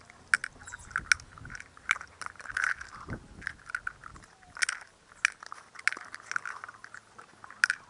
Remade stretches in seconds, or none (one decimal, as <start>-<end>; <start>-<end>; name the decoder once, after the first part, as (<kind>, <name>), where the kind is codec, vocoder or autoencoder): none